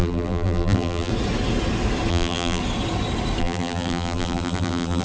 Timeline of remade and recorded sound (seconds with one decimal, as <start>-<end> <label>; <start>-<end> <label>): 0.0-1.1 remade; 1.1-2.1 recorded; 2.1-2.6 remade; 2.6-3.4 recorded; 3.4-5.0 remade